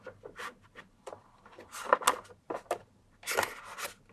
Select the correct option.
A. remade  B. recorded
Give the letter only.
B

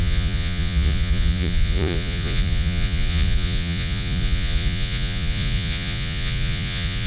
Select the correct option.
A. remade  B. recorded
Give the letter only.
A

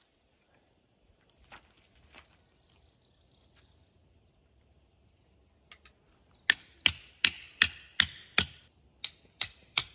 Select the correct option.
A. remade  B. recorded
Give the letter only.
B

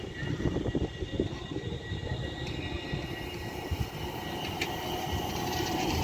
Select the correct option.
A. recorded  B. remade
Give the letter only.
A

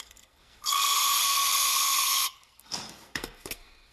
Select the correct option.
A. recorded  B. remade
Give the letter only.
B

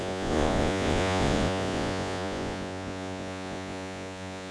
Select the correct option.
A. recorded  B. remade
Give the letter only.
B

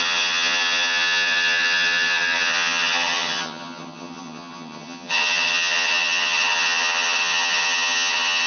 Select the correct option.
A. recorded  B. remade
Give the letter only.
B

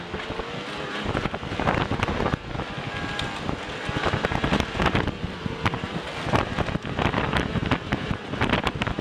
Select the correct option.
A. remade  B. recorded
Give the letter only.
B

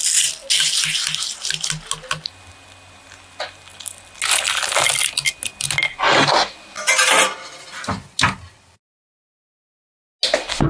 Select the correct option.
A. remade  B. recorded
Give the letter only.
B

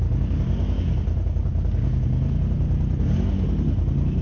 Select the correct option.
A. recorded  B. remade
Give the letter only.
A